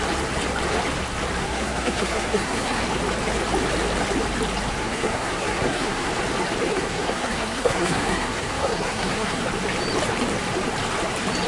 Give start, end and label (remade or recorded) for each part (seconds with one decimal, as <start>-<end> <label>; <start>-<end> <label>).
0.0-1.4 recorded; 1.4-2.8 remade; 2.8-4.7 recorded; 4.7-6.1 remade; 6.1-6.7 recorded; 6.7-9.4 remade; 9.4-11.5 recorded